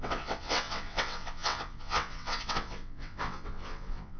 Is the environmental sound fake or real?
fake